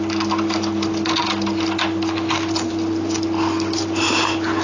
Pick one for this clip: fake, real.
real